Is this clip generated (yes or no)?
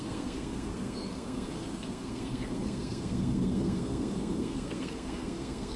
yes